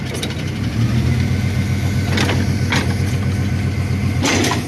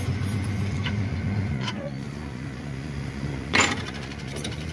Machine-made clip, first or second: second